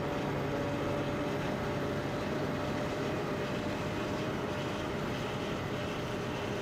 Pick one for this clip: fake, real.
real